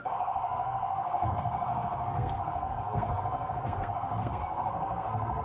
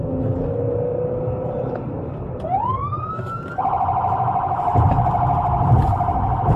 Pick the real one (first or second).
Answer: second